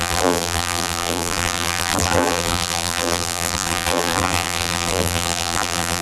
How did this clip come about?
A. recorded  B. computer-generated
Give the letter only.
B